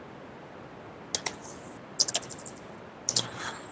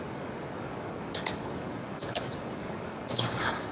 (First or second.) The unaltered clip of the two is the first